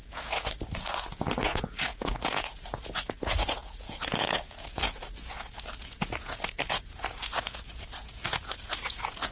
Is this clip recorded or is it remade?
remade